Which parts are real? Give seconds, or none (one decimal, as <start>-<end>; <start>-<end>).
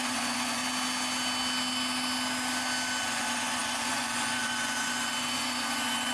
0.6-3.0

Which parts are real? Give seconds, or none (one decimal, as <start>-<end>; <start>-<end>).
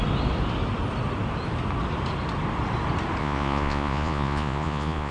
0.0-3.2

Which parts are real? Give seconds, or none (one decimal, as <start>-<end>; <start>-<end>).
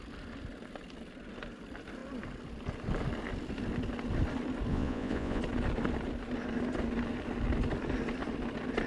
0.0-4.7; 5.4-8.9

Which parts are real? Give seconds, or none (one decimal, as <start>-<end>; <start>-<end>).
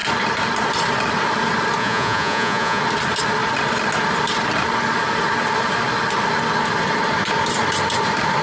0.0-1.8; 2.8-8.4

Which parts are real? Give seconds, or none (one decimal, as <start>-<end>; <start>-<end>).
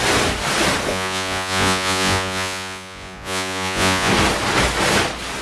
0.0-0.9; 4.1-5.4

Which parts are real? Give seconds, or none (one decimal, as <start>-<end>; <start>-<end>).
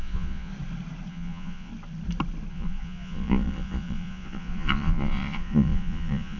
0.5-1.1; 1.7-2.5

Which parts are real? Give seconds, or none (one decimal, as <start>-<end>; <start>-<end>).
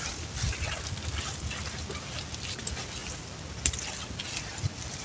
0.0-5.0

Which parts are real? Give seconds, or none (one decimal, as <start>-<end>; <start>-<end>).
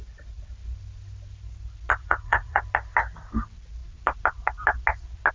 0.0-2.0; 2.6-5.3